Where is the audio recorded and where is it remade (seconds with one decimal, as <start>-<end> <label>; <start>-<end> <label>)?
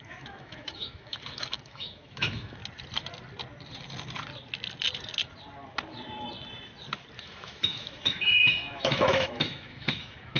0.0-2.6 remade; 2.6-7.2 recorded; 7.2-10.4 remade